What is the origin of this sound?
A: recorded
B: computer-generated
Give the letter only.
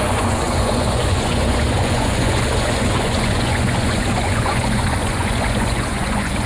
B